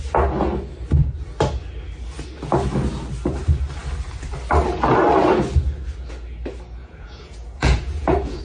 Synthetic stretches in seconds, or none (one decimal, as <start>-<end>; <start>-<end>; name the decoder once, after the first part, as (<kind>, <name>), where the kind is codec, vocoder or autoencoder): 6.8-8.4 (vocoder, Vocos)